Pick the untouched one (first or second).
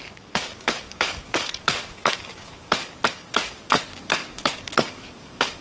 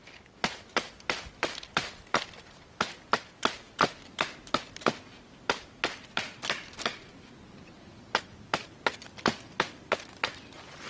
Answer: second